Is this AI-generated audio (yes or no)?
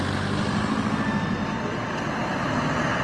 no